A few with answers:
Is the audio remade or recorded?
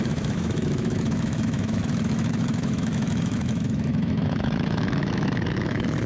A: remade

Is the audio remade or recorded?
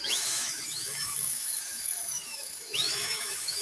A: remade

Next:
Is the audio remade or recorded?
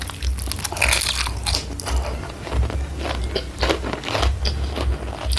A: recorded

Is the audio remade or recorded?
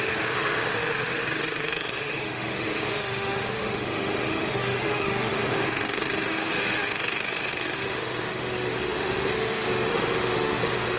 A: remade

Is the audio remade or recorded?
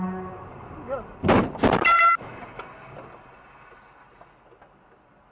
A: recorded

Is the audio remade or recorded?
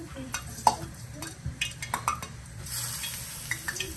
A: recorded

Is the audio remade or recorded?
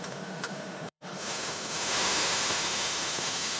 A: remade